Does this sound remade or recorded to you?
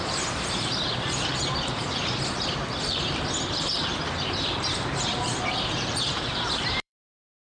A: remade